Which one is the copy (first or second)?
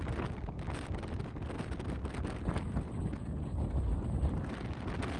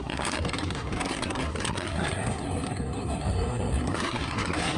second